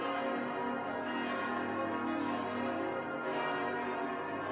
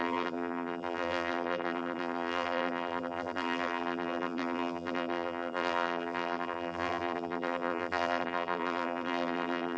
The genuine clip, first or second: first